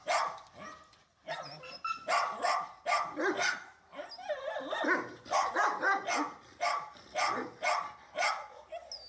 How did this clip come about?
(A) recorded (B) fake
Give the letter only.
A